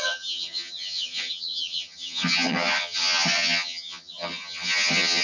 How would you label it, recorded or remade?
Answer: remade